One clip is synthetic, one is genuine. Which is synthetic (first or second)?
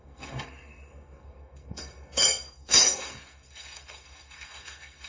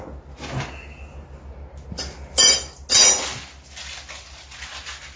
first